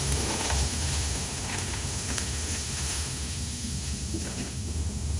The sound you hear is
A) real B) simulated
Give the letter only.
B